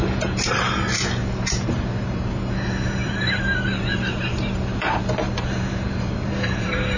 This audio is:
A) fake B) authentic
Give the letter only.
A